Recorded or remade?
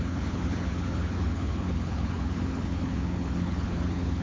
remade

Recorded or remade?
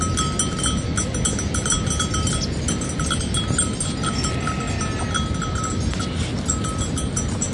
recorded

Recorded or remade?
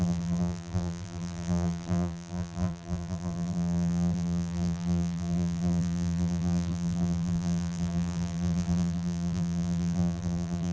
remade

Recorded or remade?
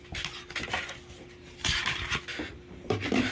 recorded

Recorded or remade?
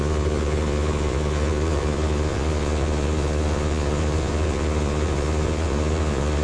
remade